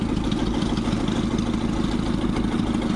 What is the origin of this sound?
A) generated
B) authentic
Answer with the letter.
B